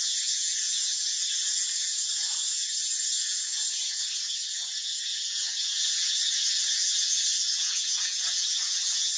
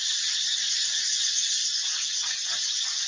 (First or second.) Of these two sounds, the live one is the second